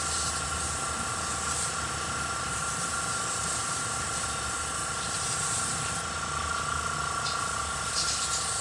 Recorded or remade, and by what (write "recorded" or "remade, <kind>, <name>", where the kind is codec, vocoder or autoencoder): recorded